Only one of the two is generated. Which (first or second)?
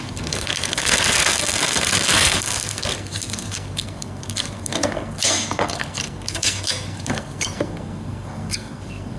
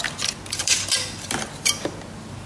first